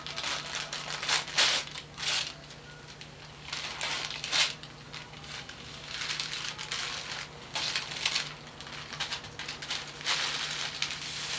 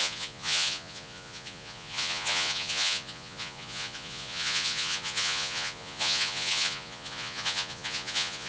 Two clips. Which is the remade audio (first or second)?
second